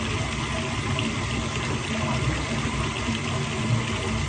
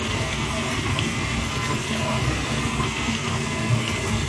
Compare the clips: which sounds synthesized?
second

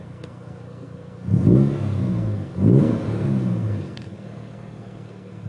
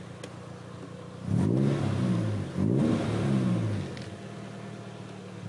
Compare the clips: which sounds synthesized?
first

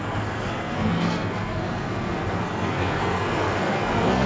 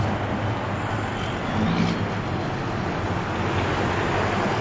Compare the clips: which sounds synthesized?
first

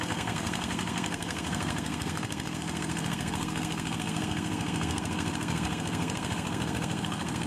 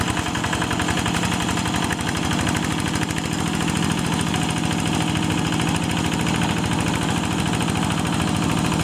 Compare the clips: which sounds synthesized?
first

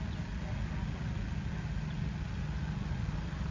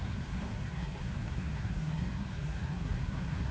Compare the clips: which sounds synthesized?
second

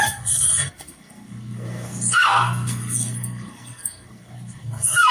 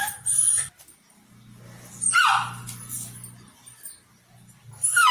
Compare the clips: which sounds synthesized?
first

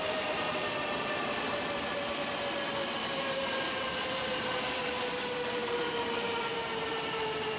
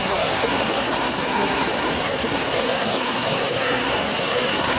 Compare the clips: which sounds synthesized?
second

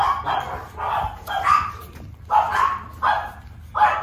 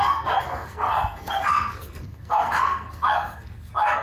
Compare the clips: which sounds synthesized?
second